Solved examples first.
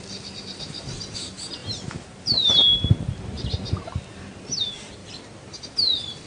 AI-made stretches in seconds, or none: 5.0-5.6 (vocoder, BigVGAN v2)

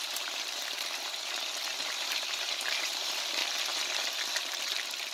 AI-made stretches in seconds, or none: 0.0-3.4 (vocoder, BigVGAN v2); 4.4-5.1

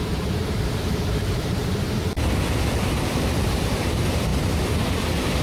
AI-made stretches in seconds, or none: 0.0-1.6 (vocoder, BigVGAN v2); 2.6-5.4

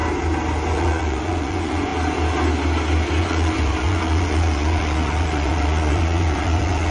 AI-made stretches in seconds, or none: 0.7-1.9 (vocoder, Vocos); 3.2-6.9